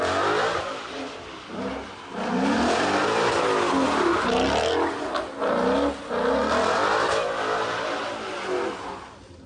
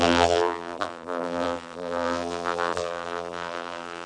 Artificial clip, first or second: second